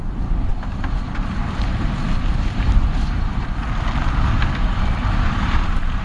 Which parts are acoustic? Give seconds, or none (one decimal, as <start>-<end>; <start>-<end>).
3.4-5.0